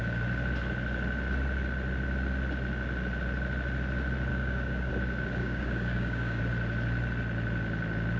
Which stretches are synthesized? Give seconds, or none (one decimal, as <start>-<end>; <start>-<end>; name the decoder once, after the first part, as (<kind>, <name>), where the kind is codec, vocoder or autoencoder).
4.3-4.9 (codec, DAC); 5.4-6.4